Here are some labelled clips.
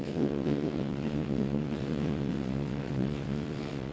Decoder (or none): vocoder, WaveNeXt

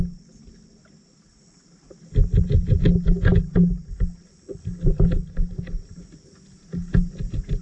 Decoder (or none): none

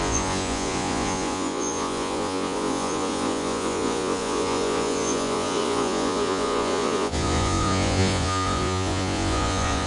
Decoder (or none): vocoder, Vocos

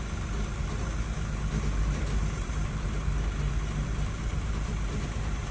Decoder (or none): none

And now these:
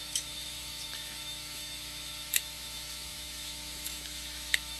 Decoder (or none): autoencoder, DAC-VAE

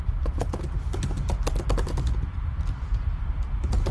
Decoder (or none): none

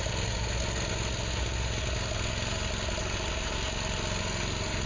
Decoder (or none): none